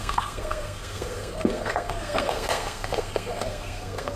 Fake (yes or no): yes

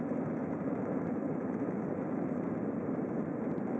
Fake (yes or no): yes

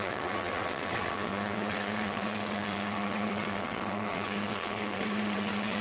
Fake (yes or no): yes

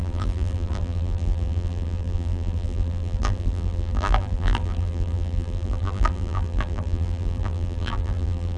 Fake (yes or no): yes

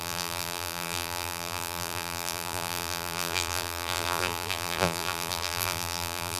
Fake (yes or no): yes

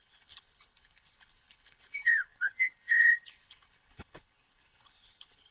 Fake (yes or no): yes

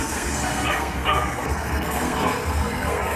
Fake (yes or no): yes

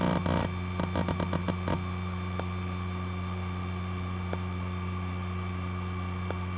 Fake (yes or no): no